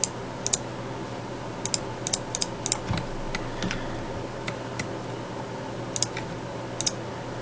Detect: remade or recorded recorded